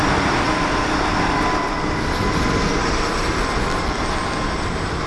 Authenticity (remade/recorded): recorded